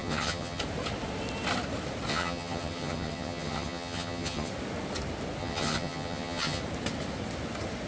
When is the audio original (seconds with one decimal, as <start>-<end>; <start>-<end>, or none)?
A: 0.6-2.1; 4.5-5.4; 6.6-7.9